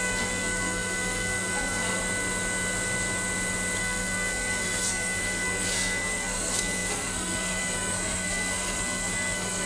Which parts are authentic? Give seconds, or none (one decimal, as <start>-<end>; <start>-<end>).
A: 2.0-3.8